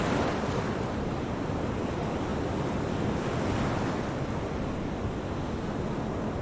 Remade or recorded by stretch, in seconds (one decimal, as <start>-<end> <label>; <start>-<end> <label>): 0.0-6.4 recorded